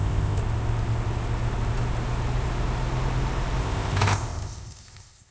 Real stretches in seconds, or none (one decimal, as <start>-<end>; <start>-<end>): 0.4-3.6